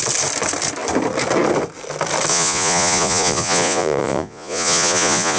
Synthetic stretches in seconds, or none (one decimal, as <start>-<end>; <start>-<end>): 2.3-5.4